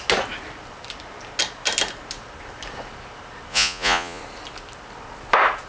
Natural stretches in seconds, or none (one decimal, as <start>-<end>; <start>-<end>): 0.0-3.5; 4.2-5.7